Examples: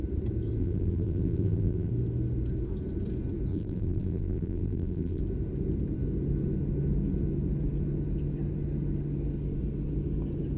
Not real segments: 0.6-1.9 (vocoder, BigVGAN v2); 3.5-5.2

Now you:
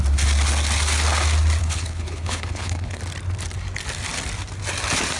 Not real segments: 1.6-3.0 (codec, HILCodec)

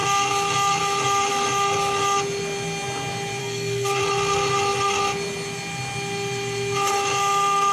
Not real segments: 3.4-4.0 (codec, SNAC)

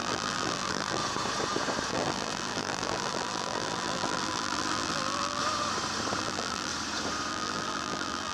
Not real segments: 0.0-1.0 (vocoder, BigVGAN v2); 1.9-5.4; 6.2-6.7; 7.3-8.3

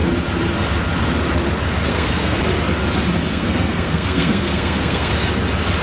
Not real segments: 1.9-2.4 (codec, SNAC); 3.3-5.1